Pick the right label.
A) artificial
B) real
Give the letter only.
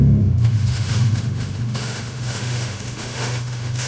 A